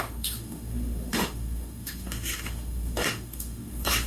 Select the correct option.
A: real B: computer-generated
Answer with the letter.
B